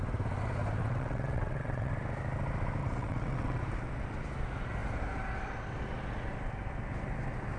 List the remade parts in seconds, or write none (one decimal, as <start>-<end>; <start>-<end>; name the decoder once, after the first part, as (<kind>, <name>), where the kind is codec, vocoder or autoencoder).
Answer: 0.8-1.9 (vocoder, WaveNeXt); 2.8-3.6